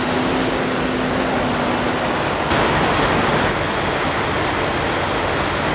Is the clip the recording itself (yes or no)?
yes